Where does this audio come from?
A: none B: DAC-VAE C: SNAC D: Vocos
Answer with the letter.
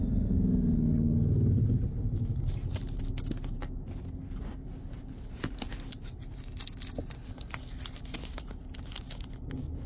A